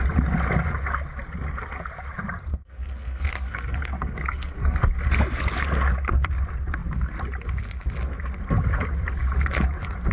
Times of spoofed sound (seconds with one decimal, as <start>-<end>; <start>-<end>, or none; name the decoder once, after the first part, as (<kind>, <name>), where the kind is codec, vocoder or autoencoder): 2.5-4.8 (codec, SNAC)